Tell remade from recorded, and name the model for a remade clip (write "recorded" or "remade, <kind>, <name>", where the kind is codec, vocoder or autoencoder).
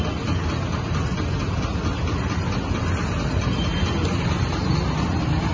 recorded